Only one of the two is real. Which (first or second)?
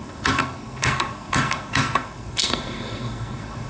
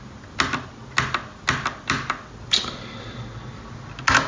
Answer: second